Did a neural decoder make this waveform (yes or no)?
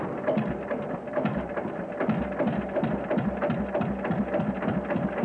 no